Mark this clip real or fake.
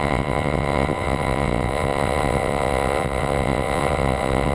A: fake